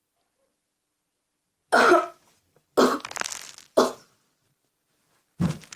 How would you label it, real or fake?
real